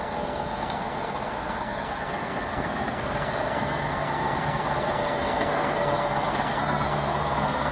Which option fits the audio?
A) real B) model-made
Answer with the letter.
B